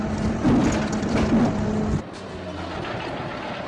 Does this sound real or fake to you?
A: real